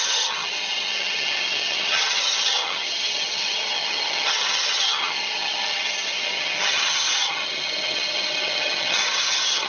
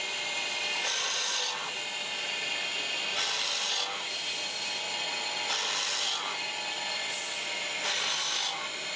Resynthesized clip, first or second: first